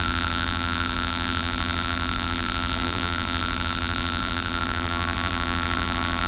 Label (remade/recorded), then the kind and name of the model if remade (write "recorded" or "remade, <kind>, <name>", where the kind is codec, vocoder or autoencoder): remade, vocoder, BigVGAN v2